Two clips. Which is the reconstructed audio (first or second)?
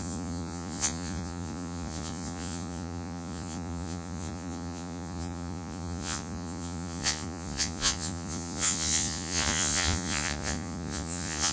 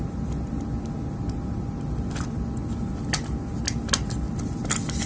first